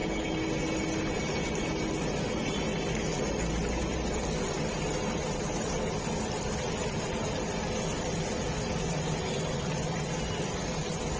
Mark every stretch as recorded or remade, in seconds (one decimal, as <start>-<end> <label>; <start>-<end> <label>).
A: 0.0-11.2 recorded